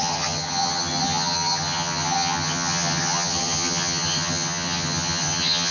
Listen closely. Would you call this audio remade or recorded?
remade